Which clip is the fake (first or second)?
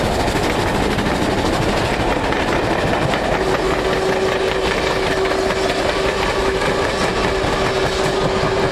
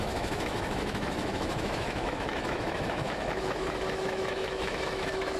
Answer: second